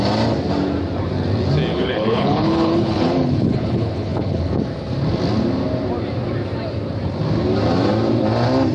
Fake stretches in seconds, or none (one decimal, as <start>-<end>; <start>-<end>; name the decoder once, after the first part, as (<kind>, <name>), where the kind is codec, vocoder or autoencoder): 1.7-4.6 (codec, HILCodec)